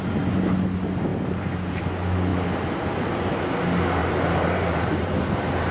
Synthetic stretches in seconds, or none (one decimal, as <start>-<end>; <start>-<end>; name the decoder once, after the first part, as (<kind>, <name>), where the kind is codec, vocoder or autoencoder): 1.1-1.8 (vocoder, BigVGAN v2); 4.0-5.7

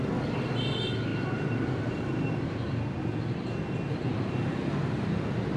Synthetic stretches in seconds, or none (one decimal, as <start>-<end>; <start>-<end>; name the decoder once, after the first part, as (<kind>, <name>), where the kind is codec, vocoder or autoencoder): none

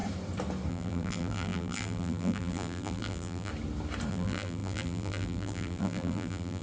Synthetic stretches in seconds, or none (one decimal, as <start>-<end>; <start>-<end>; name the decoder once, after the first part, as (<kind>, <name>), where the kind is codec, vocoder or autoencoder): 0.7-3.5 (vocoder, BigVGAN v2); 4.1-6.6

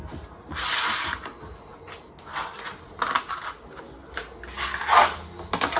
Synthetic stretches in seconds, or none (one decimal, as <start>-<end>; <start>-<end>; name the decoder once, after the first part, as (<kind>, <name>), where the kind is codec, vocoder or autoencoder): none

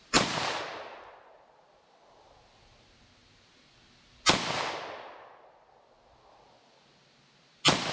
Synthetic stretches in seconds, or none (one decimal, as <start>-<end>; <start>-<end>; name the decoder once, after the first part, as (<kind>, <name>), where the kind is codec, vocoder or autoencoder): 0.0-0.6 (vocoder, BigVGAN v2)

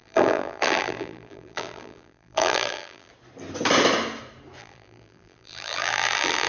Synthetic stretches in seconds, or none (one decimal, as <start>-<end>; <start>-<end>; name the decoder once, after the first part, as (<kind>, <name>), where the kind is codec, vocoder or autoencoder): 0.0-3.1 (vocoder, BigVGAN v2); 4.6-6.5

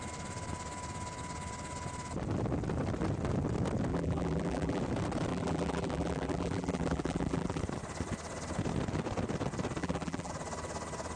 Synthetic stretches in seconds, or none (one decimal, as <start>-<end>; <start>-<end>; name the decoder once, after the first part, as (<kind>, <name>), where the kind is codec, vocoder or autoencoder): 3.9-4.8 (vocoder, BigVGAN v2); 5.3-7.6; 9.8-10.3

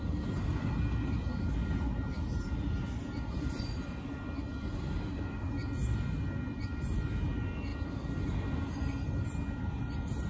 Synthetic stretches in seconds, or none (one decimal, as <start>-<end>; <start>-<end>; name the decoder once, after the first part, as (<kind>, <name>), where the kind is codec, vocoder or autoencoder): none